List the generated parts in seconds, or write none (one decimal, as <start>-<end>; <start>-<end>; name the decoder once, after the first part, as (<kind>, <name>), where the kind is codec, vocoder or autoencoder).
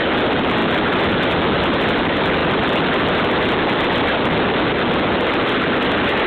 none